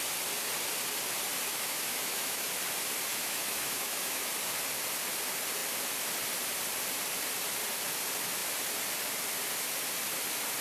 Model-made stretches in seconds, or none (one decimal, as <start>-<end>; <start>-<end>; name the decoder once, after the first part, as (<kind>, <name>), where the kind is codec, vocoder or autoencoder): 1.5-2.5 (autoencoder, DAC-VAE); 3.1-4.3